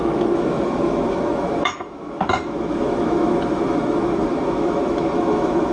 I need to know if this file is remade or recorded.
remade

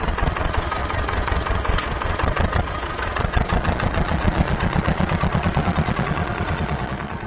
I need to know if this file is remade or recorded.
remade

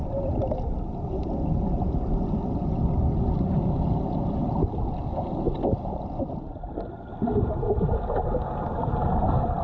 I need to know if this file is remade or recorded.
recorded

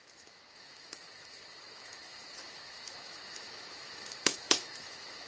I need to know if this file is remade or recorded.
remade